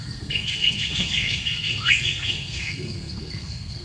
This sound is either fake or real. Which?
fake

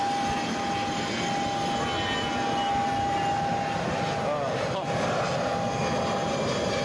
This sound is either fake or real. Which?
real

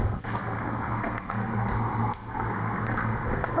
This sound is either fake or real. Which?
fake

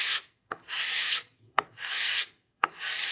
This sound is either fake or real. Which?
fake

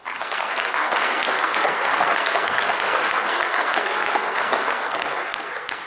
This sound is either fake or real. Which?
fake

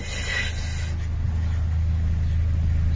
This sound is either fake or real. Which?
real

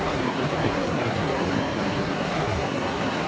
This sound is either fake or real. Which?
fake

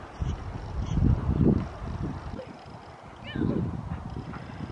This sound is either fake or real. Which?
real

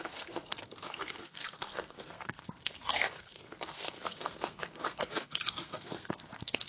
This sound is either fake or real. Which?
fake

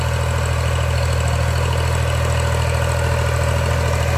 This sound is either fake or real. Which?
real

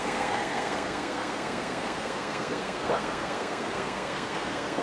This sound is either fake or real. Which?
fake